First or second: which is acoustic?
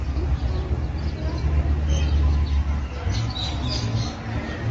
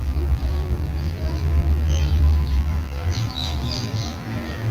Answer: first